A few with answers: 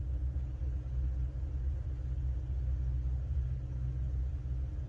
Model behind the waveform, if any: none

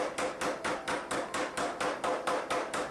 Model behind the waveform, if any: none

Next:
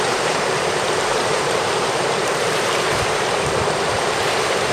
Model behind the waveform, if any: vocoder, BigVGAN v2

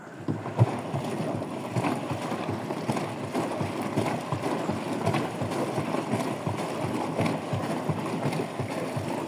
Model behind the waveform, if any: none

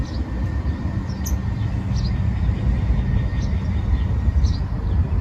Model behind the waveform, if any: none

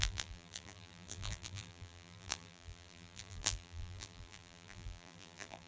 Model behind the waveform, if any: vocoder, BigVGAN v2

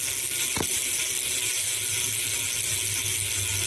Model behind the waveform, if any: none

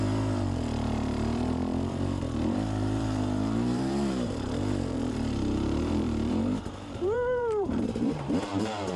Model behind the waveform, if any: vocoder, BigVGAN v2